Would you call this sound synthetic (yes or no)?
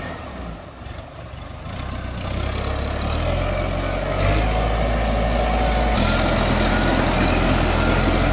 no